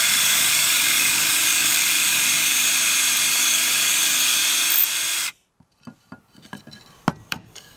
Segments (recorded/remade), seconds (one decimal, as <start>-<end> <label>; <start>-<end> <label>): 0.0-2.7 remade; 2.7-3.3 recorded; 3.3-4.4 remade; 4.4-7.3 recorded; 7.3-7.8 remade